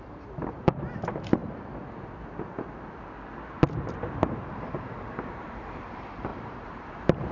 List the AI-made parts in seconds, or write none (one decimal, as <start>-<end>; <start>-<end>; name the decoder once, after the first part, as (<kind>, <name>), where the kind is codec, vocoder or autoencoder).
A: 0.0-1.4 (vocoder, BigVGAN v2); 5.2-7.3